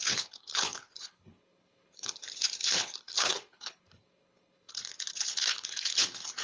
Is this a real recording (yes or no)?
no